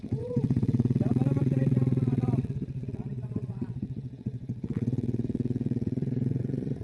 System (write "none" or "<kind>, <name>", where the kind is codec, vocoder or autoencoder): vocoder, WaveNeXt